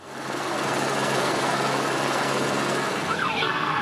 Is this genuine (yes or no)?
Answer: no